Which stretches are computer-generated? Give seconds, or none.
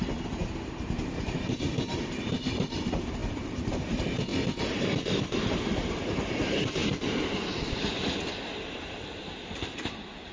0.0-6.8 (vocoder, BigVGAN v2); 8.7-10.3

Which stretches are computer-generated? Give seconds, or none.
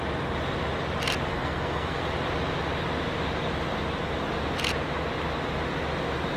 1.3-2.0 (codec, SNAC)